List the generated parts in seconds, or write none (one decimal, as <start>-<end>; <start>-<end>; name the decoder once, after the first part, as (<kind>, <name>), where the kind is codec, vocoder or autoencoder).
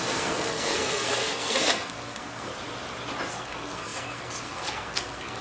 0.0-2.5 (codec, SNAC); 3.3-5.4